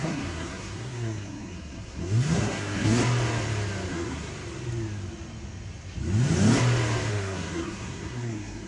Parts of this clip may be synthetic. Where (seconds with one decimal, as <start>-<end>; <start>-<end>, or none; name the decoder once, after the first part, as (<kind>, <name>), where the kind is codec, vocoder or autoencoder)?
0.0-3.0 (codec, SNAC); 3.9-4.3; 7.1-8.7